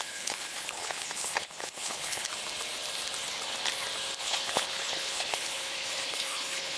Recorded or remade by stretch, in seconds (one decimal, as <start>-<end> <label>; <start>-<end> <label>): 0.0-2.3 remade; 2.3-4.2 recorded; 4.2-6.8 remade